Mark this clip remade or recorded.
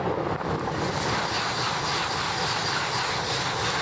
recorded